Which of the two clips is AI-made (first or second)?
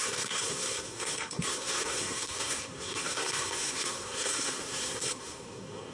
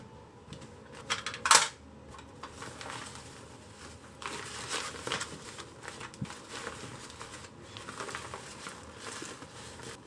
first